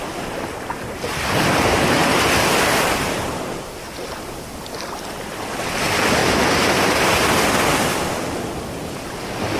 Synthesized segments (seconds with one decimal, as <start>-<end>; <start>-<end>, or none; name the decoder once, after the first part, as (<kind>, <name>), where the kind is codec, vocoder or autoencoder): 2.0-3.6 (vocoder, BigVGAN v2); 6.2-7.1

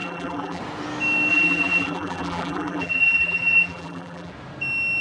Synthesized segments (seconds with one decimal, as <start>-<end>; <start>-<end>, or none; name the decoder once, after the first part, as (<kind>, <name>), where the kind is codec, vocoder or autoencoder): 0.0-0.6 (vocoder, BigVGAN v2); 1.3-4.3

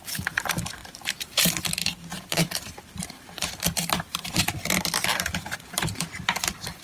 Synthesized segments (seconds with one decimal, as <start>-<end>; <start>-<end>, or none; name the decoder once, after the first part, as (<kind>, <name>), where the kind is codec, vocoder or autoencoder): 0.8-1.5 (vocoder, BigVGAN v2); 2.1-4.5; 5.1-6.1

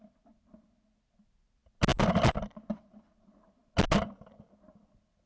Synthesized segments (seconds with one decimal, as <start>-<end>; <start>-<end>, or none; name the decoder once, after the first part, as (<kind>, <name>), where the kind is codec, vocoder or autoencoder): none